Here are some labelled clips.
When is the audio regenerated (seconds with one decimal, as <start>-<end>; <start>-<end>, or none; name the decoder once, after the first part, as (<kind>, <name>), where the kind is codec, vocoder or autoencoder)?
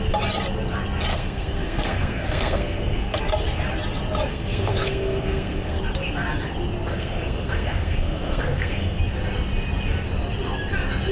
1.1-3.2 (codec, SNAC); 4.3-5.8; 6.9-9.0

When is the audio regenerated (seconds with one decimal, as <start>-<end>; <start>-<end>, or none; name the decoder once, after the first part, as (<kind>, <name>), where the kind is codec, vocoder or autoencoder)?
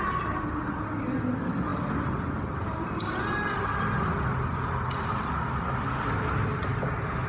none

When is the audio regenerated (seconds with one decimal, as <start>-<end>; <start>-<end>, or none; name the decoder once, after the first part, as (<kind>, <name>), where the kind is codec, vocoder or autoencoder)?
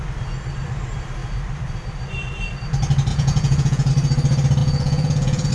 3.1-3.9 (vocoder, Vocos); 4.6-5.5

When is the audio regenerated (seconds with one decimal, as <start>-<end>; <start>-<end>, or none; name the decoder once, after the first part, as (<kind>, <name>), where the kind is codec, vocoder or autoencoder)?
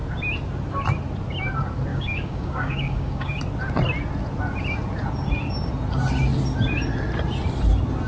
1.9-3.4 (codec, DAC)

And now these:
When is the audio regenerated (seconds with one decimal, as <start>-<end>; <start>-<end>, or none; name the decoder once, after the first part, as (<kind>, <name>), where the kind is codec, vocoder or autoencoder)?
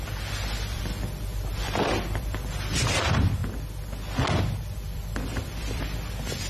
0.0-3.4 (vocoder, BigVGAN v2); 4.4-6.5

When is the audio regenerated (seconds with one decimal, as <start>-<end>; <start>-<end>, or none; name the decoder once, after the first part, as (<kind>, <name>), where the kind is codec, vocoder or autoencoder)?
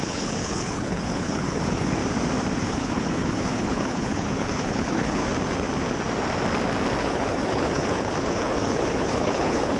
0.0-2.0 (codec, HILCodec); 2.6-5.2; 7.0-9.8